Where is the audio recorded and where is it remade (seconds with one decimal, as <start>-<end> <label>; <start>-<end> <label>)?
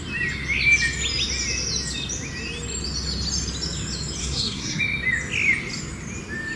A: 0.0-4.2 recorded; 4.2-4.8 remade; 4.8-6.6 recorded